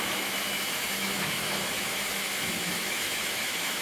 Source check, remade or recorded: remade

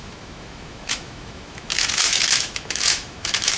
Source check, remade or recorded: remade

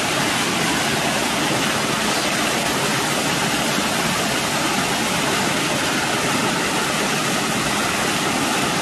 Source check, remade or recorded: recorded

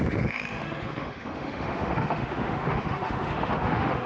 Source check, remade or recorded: remade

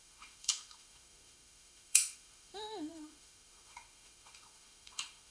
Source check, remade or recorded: remade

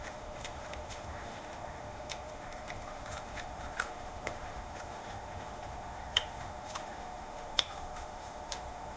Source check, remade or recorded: remade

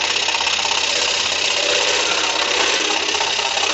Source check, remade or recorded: recorded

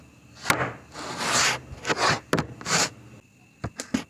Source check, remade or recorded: recorded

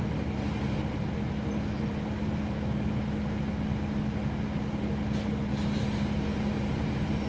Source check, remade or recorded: recorded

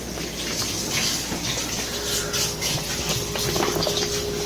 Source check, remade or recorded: recorded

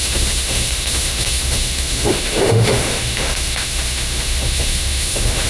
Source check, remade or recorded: remade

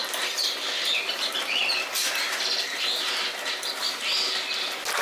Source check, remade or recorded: recorded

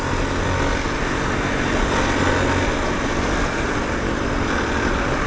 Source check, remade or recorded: recorded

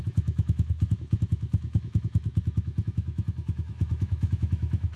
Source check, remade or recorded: remade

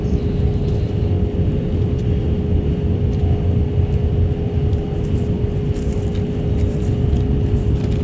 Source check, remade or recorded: recorded